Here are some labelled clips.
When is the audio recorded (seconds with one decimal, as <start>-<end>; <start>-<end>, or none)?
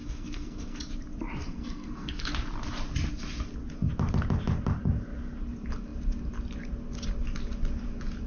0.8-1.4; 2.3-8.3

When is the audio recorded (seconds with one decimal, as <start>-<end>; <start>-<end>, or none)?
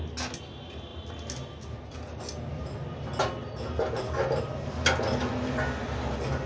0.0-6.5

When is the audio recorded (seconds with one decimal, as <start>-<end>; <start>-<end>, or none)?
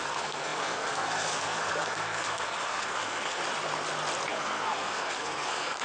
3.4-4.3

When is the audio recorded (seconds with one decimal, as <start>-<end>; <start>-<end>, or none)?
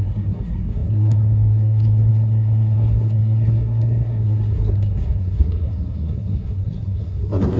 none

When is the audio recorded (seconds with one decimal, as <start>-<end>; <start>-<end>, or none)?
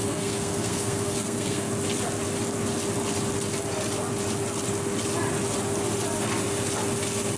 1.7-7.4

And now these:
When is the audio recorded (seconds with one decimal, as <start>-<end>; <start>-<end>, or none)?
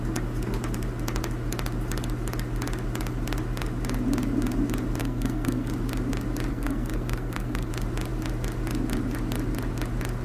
0.0-5.0; 5.7-6.5; 7.7-10.2